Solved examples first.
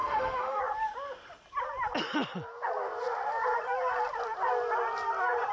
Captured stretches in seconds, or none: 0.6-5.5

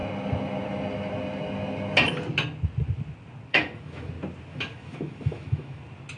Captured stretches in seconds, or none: 0.0-3.5; 4.1-4.5; 5.8-6.2

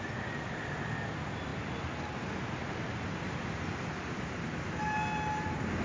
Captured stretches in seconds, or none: 0.0-5.8

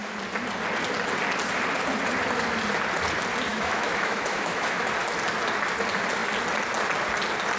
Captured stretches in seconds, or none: 0.0-3.5; 4.8-7.6

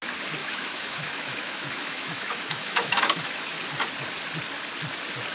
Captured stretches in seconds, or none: 0.0-0.4; 3.6-5.3

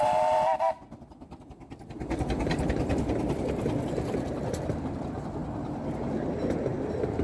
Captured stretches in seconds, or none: 0.0-7.2

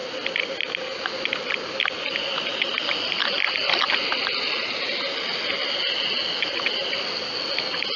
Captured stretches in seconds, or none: 0.0-8.0